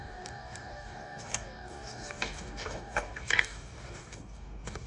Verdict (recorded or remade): remade